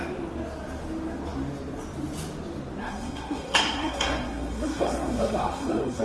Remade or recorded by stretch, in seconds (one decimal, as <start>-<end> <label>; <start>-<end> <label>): 0.0-2.8 recorded; 2.8-6.0 remade